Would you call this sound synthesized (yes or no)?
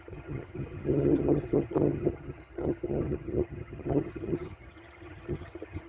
yes